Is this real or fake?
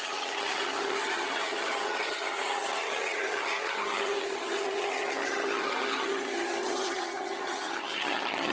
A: fake